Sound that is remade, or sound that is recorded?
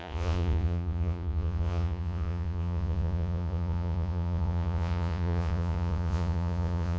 remade